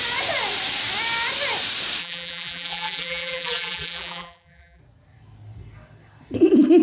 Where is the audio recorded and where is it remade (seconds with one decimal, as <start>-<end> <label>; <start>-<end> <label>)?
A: 0.0-2.0 recorded; 2.0-4.8 remade; 4.8-6.8 recorded